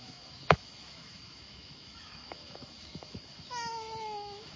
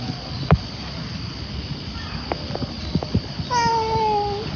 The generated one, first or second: first